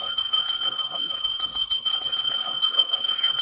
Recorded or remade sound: remade